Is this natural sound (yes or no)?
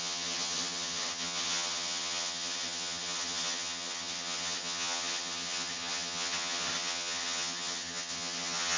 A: no